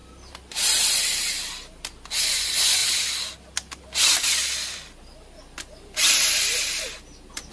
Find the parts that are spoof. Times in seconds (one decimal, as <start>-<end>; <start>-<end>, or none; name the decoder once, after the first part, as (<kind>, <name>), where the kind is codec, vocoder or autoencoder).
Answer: 2.3-2.8 (vocoder, Vocos)